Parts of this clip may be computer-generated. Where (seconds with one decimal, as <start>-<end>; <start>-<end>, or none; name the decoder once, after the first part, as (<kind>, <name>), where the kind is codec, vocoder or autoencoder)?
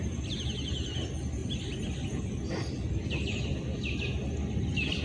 none